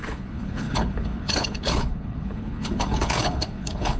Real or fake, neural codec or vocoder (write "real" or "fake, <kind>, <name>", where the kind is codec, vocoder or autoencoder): fake, codec, HILCodec